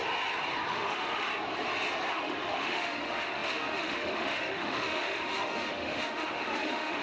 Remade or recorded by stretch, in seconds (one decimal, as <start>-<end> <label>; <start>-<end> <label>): 0.0-0.7 recorded; 0.7-1.3 remade; 1.3-2.1 recorded; 2.1-7.0 remade